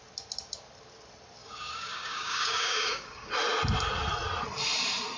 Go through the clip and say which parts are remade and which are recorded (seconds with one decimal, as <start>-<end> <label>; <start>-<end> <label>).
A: 0.0-1.4 recorded; 1.4-3.3 remade; 3.3-5.2 recorded